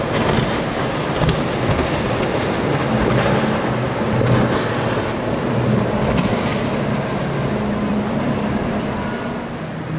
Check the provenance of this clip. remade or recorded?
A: recorded